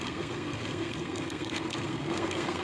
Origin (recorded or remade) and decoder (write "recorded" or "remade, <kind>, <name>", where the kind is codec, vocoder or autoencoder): remade, codec, SNAC